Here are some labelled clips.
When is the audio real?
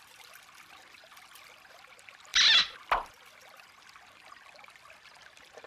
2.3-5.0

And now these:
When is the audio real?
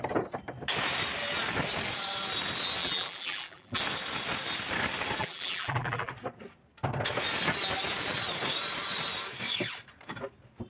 0.0-2.8; 3.8-5.2; 6.1-10.7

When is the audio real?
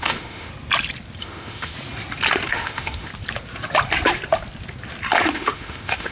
0.5-1.2; 1.7-2.5; 3.1-5.3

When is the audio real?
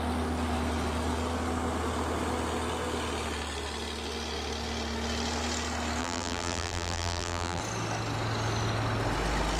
0.0-6.0; 7.6-9.6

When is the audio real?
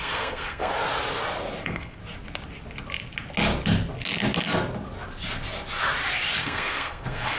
0.7-1.6; 2.0-6.4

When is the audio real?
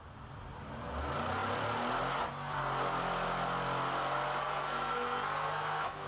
0.0-4.4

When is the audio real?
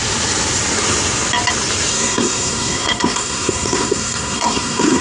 0.0-1.9